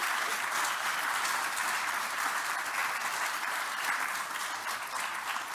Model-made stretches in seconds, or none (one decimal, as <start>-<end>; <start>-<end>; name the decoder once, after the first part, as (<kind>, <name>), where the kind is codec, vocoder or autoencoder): none